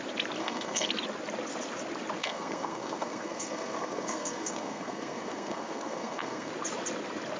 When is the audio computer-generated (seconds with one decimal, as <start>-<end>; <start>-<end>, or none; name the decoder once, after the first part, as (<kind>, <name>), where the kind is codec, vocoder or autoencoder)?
0.4-0.9 (codec, SNAC); 2.2-6.5